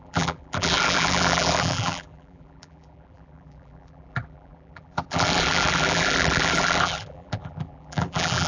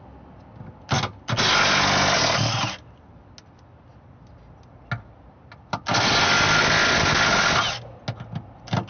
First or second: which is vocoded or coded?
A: first